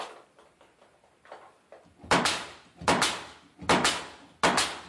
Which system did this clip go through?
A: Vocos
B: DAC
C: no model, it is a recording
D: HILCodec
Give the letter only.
C